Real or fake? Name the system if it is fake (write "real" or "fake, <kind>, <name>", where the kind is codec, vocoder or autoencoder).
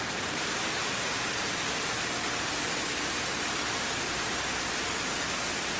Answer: fake, vocoder, BigVGAN v2